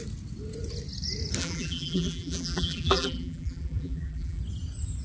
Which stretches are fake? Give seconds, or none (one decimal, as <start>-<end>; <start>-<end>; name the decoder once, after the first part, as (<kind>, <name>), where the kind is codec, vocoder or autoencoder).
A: 1.4-4.4 (vocoder, BigVGAN v2)